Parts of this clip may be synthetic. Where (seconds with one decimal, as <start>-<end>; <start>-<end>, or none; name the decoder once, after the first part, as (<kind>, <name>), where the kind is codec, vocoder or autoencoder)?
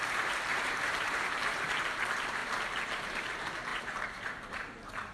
0.0-2.4 (vocoder, BigVGAN v2); 3.1-5.1